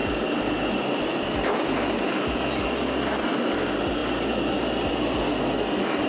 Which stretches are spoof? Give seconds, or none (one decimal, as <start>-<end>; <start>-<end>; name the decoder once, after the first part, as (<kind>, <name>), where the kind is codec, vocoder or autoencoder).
none